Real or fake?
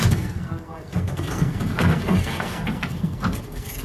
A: fake